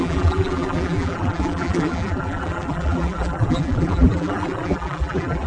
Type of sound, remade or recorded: remade